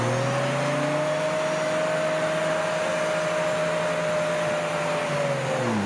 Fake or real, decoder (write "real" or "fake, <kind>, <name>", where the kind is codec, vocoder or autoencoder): real